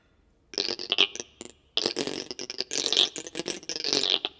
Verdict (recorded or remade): recorded